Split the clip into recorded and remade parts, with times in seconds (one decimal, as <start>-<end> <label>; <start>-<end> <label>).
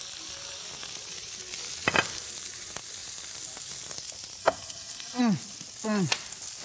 0.0-4.4 recorded; 4.4-5.2 remade; 5.2-6.6 recorded